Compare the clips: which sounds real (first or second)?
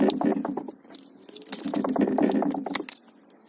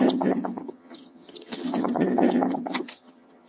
first